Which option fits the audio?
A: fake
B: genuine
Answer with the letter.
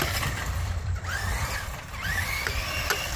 A